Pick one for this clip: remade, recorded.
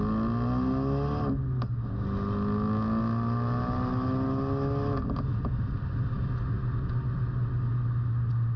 recorded